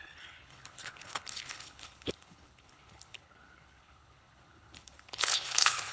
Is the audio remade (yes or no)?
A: yes